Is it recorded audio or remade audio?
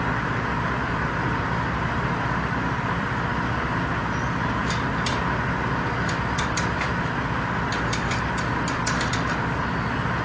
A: recorded